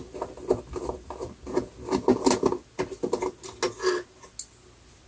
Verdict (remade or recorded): recorded